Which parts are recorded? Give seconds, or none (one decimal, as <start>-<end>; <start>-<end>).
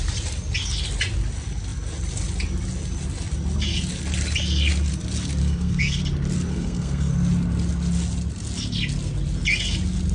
0.0-5.4; 6.0-6.5; 7.1-10.1